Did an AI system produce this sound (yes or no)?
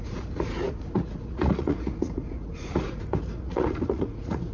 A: yes